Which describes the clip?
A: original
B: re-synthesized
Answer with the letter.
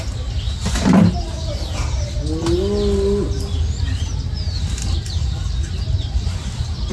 A